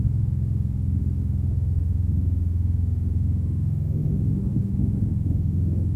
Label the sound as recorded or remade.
remade